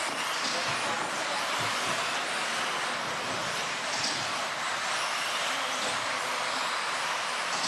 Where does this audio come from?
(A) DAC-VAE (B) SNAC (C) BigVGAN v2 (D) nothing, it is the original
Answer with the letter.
D